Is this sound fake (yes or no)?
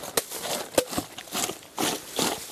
no